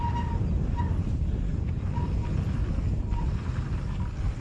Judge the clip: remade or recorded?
recorded